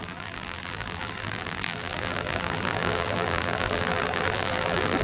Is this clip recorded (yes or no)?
no